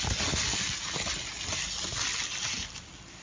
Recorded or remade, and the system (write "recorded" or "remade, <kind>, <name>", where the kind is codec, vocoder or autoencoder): recorded